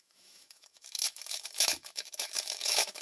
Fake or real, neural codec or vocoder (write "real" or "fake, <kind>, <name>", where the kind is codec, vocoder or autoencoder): fake, autoencoder, DAC-VAE